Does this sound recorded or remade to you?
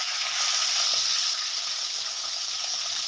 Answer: remade